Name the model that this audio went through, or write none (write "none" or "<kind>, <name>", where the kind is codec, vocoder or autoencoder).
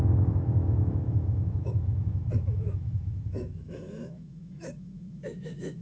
autoencoder, DAC-VAE